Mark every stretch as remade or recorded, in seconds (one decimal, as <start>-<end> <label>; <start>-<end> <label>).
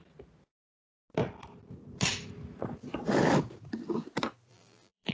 0.0-4.5 recorded; 4.5-5.1 remade